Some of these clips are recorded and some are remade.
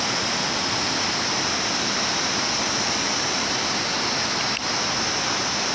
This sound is recorded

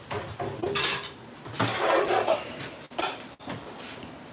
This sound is recorded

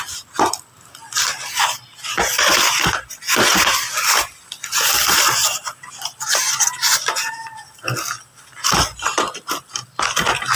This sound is recorded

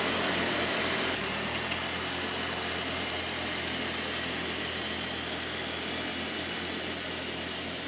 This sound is recorded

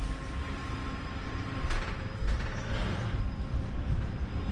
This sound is remade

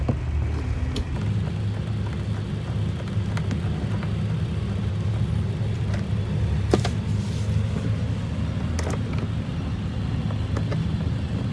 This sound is recorded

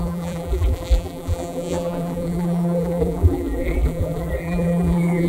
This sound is remade